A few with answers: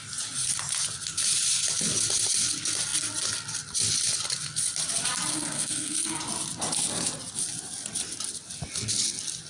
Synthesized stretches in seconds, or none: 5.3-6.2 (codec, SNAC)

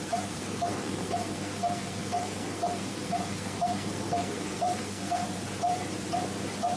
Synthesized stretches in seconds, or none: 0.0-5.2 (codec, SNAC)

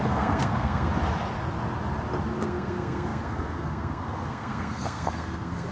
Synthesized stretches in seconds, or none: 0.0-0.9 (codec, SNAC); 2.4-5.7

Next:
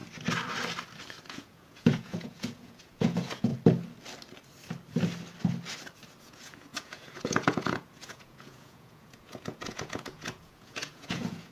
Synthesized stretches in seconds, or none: 1.3-3.5 (vocoder, Vocos); 6.2-11.5